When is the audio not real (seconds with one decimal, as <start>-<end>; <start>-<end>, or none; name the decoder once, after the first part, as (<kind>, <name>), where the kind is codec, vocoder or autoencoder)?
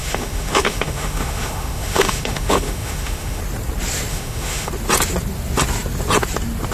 0.0-3.4 (autoencoder, DAC-VAE); 4.1-4.7